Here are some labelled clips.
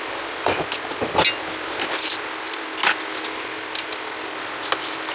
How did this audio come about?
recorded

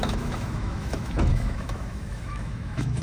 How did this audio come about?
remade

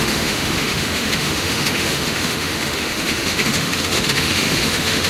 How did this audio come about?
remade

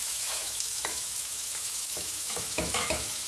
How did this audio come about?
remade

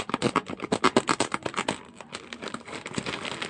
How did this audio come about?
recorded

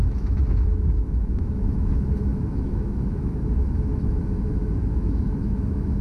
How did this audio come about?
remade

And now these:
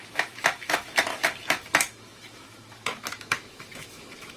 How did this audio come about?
remade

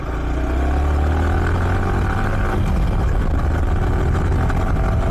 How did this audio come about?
recorded